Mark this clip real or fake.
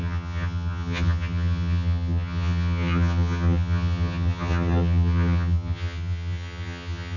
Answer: fake